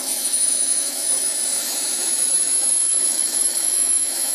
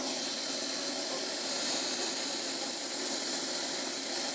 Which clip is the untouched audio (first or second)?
second